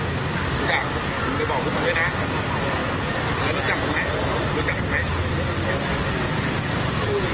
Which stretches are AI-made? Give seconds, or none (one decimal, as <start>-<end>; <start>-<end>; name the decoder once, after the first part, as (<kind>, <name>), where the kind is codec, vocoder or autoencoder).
none